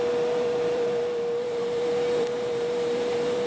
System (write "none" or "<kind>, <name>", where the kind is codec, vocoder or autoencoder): vocoder, BigVGAN v2